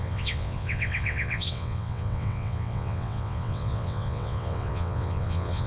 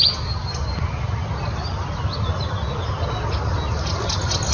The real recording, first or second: second